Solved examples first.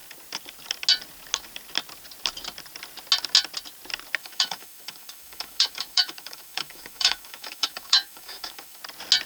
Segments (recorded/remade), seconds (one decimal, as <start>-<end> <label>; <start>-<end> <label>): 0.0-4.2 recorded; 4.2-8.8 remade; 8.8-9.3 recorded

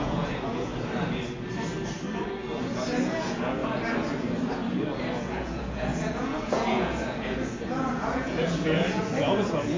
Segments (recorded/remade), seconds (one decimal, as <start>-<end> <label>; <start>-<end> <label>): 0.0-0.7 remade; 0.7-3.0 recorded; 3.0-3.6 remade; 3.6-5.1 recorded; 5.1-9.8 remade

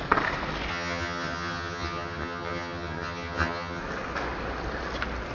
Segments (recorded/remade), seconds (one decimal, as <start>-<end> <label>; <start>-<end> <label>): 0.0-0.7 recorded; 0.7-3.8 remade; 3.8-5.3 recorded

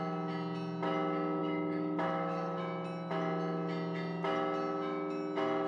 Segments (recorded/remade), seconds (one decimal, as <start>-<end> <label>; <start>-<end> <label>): 0.0-1.4 recorded; 1.4-2.6 remade; 2.6-5.7 recorded

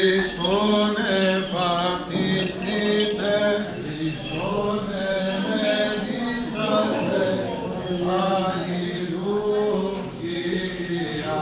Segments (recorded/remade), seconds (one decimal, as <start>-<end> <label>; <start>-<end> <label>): 0.0-1.5 remade; 1.5-3.4 recorded; 3.4-5.7 remade; 5.7-6.7 recorded; 6.7-9.5 remade; 9.5-10.1 recorded; 10.1-11.4 remade

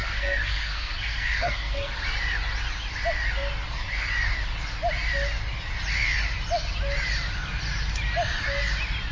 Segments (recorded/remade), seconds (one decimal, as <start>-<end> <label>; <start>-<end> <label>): 0.0-1.9 remade; 1.9-9.1 recorded

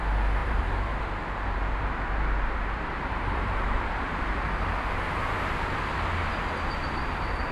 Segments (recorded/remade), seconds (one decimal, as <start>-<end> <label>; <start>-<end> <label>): 0.0-0.4 recorded; 0.4-4.2 remade; 4.2-7.5 recorded

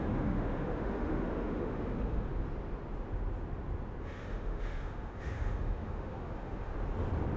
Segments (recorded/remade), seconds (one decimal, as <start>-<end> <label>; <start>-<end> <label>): 0.0-2.3 remade; 2.3-4.0 recorded; 4.0-6.7 remade; 6.7-7.4 recorded